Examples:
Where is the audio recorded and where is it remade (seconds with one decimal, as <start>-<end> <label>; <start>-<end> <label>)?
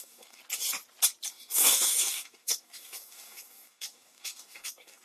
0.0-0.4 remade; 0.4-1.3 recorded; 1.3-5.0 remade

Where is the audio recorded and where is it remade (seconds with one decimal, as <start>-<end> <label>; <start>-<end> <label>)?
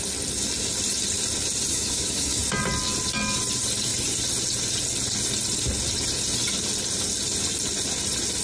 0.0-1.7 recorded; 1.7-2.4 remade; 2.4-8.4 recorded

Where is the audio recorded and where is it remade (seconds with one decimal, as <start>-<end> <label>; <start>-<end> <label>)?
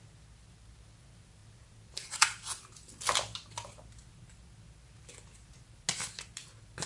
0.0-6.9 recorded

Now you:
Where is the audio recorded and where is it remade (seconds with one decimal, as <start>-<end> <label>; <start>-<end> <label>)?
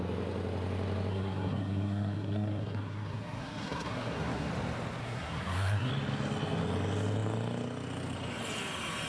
0.0-1.1 recorded; 1.1-4.5 remade; 4.5-5.0 recorded; 5.0-5.9 remade; 5.9-9.1 recorded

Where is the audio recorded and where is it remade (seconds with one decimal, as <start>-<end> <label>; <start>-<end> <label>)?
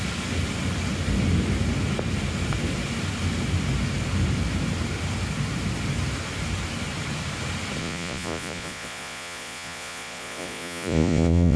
0.0-7.8 recorded; 7.8-11.6 remade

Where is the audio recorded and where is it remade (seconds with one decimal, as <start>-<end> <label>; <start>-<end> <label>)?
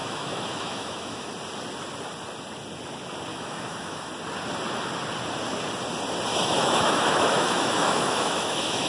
0.0-1.3 remade; 1.3-3.3 recorded; 3.3-4.1 remade; 4.1-6.3 recorded; 6.3-8.9 remade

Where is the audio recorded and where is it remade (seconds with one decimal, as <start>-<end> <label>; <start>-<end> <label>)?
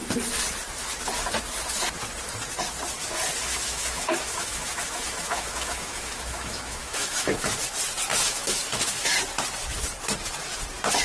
0.0-3.4 recorded; 3.4-7.5 remade; 7.5-8.1 recorded; 8.1-9.1 remade; 9.1-11.0 recorded